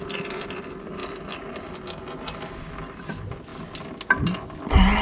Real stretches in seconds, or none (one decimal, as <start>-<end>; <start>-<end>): 0.0-5.0